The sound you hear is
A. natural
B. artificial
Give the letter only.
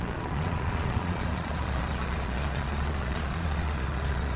B